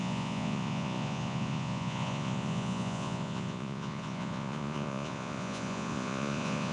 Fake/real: fake